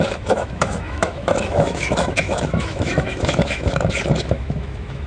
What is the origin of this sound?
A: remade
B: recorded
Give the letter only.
A